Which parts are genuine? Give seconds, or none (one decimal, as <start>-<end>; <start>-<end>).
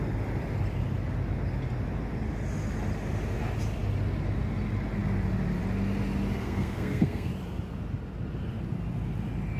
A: 0.0-6.4; 7.3-9.6